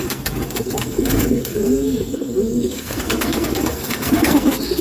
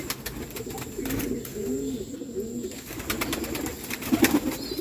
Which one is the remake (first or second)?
first